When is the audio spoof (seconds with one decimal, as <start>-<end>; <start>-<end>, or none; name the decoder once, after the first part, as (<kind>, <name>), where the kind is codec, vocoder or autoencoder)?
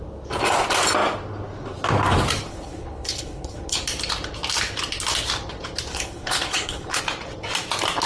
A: 2.5-3.8 (codec, HILCodec); 5.9-7.0